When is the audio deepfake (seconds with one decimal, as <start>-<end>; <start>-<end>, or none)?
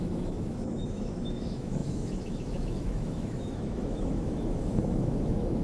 0.0-5.6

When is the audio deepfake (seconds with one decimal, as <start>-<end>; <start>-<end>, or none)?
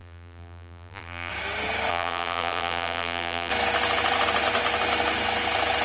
0.0-1.3; 1.9-3.5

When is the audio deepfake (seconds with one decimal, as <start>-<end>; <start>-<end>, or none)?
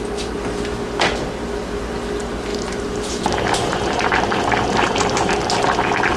2.5-5.3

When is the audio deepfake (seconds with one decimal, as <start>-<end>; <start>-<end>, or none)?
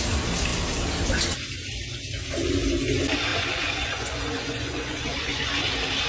3.3-5.5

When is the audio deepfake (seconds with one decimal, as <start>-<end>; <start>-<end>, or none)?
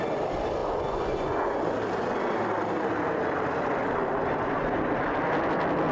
0.6-1.6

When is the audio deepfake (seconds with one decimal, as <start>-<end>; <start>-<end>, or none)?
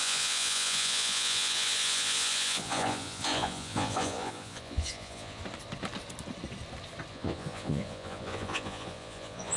0.0-5.4; 7.1-9.6